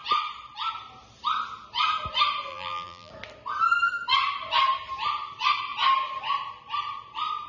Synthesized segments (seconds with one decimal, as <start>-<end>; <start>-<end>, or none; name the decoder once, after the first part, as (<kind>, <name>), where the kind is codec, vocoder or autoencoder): 2.5-3.1 (vocoder, BigVGAN v2)